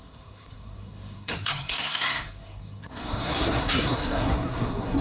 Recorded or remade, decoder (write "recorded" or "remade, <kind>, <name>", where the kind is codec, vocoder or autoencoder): remade, codec, SNAC